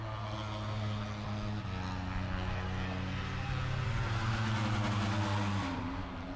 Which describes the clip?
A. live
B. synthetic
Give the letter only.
A